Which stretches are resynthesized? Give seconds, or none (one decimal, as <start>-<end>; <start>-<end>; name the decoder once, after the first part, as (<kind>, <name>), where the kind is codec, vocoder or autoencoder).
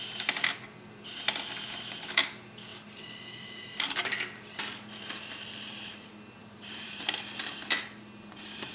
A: 2.7-3.9 (vocoder, BigVGAN v2); 6.4-7.3